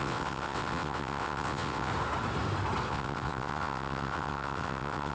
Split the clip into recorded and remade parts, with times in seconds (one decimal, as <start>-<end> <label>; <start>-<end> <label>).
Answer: 0.0-1.9 remade; 1.9-2.9 recorded; 2.9-5.1 remade